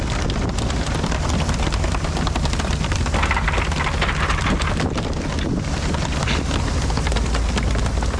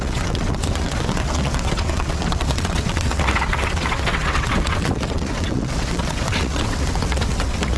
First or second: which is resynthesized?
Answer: second